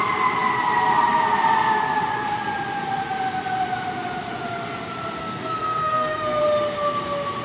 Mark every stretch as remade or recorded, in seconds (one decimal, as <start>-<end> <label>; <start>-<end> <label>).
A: 0.0-5.2 recorded; 5.2-6.4 remade; 6.4-7.4 recorded